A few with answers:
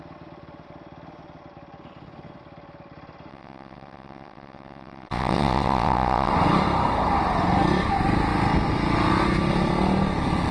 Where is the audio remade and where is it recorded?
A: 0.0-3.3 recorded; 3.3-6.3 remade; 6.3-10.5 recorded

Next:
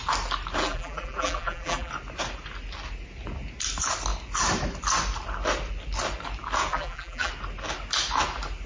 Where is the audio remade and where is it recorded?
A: 0.0-0.6 recorded; 0.6-1.9 remade; 1.9-6.7 recorded; 6.7-7.3 remade; 7.3-8.7 recorded

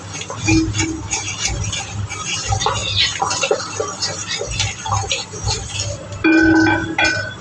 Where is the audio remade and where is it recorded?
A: 0.0-4.2 recorded; 4.2-4.9 remade; 4.9-7.4 recorded

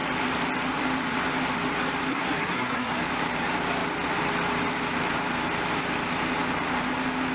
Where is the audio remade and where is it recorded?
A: 0.0-2.1 recorded; 2.1-2.9 remade; 2.9-7.3 recorded

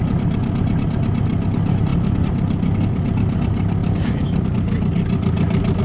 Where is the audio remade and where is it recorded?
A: 0.0-5.8 recorded

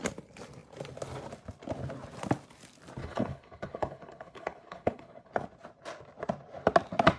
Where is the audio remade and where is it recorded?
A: 0.0-3.0 recorded; 3.0-5.3 remade; 5.3-7.2 recorded

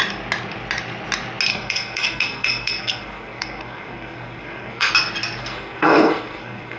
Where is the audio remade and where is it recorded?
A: 0.0-1.5 recorded; 1.5-4.9 remade; 4.9-5.4 recorded; 5.4-6.8 remade